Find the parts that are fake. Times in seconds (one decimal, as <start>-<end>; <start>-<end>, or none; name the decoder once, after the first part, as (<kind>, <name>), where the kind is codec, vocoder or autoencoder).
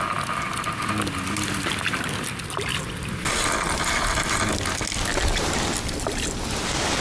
none